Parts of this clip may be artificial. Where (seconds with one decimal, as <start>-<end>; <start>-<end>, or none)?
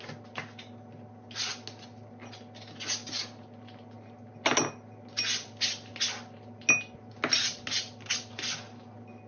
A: none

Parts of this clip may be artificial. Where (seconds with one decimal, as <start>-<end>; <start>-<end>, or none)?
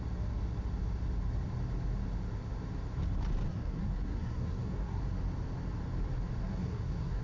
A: 3.5-5.0; 6.4-7.2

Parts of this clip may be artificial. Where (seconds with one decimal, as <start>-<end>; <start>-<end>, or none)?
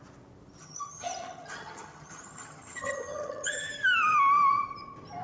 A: 0.6-3.7